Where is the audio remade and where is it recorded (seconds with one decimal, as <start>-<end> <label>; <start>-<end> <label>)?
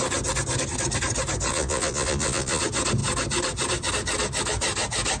0.0-1.5 recorded; 1.5-2.6 remade; 2.6-5.2 recorded